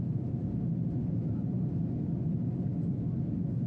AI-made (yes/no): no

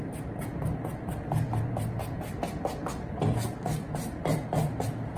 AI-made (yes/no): no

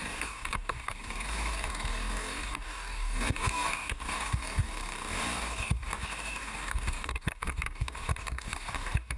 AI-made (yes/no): yes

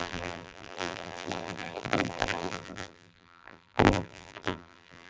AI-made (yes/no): yes